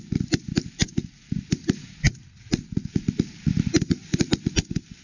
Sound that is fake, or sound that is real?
real